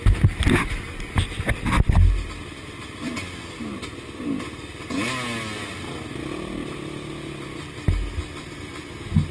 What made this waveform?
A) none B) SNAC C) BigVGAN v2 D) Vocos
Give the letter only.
A